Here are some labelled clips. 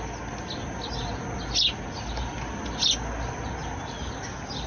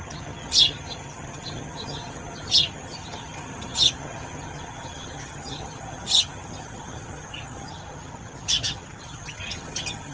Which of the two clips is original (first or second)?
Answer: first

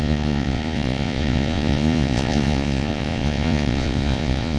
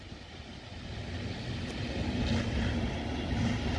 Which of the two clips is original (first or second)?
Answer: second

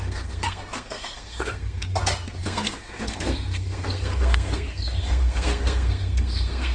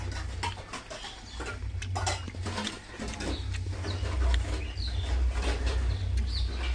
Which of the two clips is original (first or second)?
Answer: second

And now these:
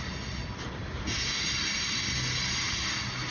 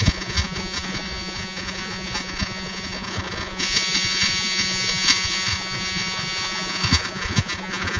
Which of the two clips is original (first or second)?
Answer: first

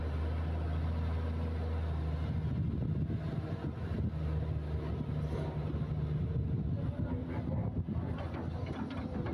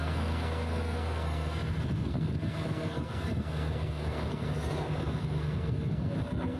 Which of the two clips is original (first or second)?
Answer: first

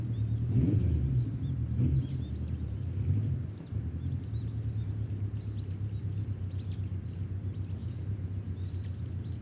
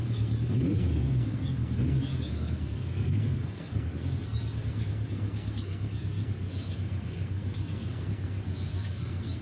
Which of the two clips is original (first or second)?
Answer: first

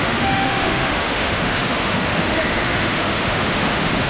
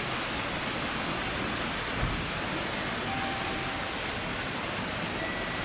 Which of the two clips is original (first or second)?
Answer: second